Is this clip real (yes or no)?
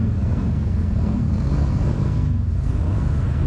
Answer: no